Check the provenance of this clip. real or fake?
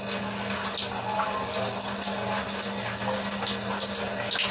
real